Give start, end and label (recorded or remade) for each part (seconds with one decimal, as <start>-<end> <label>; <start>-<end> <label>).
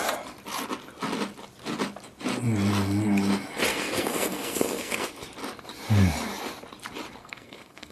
0.0-3.7 recorded; 3.7-5.1 remade; 5.1-7.2 recorded; 7.2-7.9 remade